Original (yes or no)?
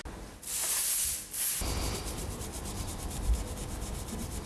yes